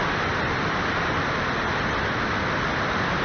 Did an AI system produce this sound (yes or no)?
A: no